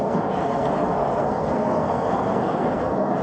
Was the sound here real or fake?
fake